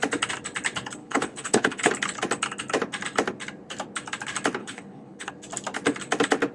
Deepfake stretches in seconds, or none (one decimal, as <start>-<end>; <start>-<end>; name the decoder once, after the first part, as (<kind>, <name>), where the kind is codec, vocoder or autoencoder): 1.0-1.9 (codec, HILCodec); 4.6-5.3